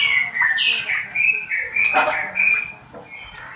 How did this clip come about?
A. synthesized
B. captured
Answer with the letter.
B